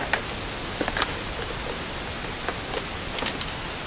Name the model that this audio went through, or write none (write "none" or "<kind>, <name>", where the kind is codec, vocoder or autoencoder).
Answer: none